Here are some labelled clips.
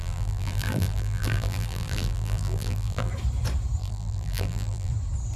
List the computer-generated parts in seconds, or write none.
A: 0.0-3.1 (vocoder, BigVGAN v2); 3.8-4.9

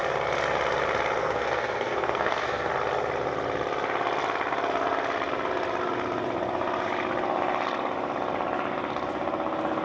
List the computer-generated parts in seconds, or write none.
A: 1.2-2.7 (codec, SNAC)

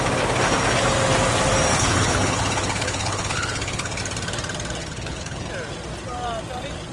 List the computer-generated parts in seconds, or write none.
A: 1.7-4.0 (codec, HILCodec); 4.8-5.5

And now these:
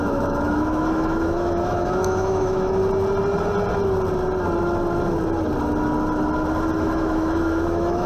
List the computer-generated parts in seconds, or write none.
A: 0.0-2.8 (autoencoder, DAC-VAE); 6.8-8.1

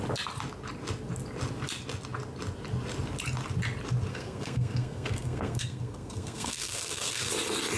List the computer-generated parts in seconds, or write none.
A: 4.1-7.3 (codec, SNAC)

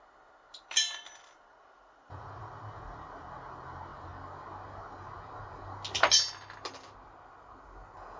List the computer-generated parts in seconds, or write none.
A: 1.5-2.5 (vocoder, Vocos)